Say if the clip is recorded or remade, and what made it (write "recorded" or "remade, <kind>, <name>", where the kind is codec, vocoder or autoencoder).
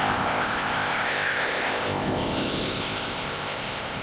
remade, codec, ZipCodec